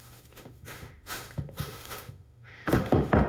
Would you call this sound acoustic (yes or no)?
no